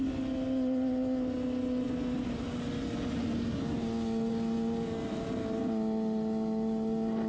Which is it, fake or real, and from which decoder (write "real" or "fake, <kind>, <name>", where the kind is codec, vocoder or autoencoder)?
real